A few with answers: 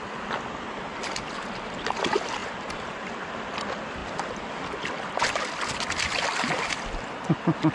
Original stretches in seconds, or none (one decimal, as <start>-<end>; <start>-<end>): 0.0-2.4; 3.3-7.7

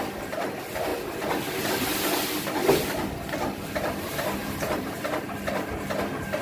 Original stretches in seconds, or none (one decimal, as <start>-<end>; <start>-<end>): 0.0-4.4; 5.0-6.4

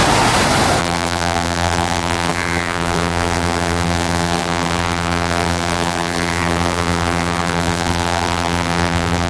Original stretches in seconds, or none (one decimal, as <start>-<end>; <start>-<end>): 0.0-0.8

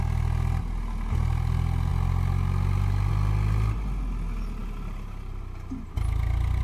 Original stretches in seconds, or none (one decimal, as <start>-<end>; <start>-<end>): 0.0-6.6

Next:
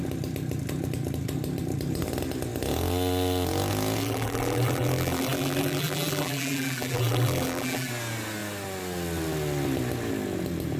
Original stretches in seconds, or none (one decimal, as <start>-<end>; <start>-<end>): 0.0-4.0; 7.9-10.8

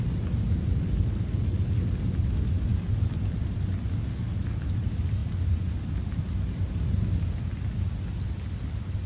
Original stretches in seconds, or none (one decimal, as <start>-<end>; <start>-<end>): 0.0-2.7; 3.7-9.1

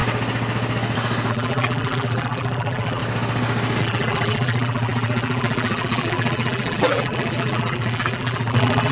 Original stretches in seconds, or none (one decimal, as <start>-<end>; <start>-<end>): 0.0-1.3; 3.0-3.8